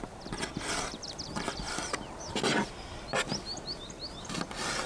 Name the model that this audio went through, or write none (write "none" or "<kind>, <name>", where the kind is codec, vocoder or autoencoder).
none